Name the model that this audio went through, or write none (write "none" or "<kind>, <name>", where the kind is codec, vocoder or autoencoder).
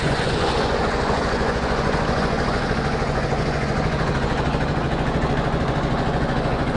vocoder, Vocos